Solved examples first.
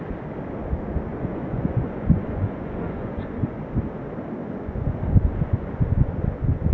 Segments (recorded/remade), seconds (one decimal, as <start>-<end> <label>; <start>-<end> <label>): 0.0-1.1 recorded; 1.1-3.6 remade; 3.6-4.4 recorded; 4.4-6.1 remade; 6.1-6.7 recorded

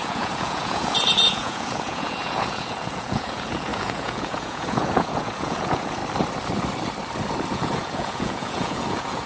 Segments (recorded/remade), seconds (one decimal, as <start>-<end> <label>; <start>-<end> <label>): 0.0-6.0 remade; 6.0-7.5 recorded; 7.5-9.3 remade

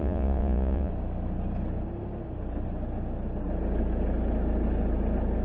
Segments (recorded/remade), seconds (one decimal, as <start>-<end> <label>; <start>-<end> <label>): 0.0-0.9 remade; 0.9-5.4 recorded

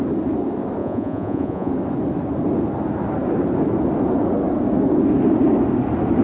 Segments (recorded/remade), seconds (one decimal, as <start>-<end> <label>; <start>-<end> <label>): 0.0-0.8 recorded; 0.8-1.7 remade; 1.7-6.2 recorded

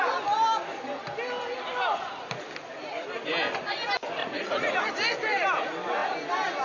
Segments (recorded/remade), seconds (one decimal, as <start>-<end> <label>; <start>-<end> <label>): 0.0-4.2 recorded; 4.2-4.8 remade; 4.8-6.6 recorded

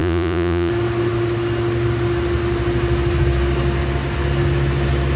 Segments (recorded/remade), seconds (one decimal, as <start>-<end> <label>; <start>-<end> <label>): 0.0-0.7 remade; 0.7-5.2 recorded

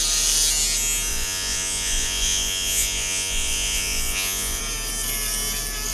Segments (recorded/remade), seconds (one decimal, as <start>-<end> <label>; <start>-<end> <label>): 0.0-1.1 recorded; 1.1-4.6 remade; 4.6-5.9 recorded

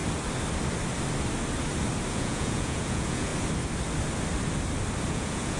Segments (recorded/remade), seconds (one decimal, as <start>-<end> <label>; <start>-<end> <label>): 0.0-2.1 recorded; 2.1-3.3 remade; 3.3-5.1 recorded; 5.1-5.6 remade